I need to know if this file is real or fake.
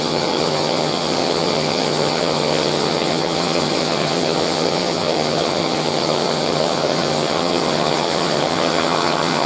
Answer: fake